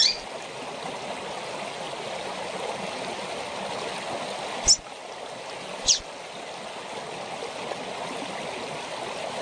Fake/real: real